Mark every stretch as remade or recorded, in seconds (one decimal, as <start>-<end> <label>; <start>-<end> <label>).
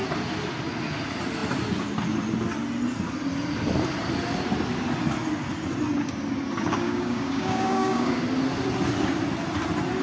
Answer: 0.0-6.7 recorded; 6.7-8.2 remade; 8.2-10.0 recorded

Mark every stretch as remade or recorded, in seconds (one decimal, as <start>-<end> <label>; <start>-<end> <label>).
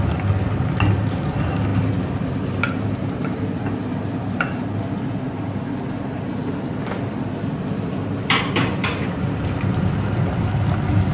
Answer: 0.0-11.1 recorded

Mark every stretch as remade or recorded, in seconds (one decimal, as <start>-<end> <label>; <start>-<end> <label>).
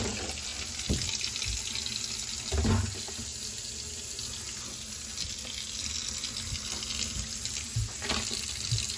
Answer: 0.0-0.5 recorded; 0.5-1.3 remade; 1.3-9.0 recorded